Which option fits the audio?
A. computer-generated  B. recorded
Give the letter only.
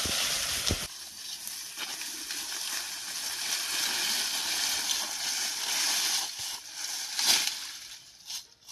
B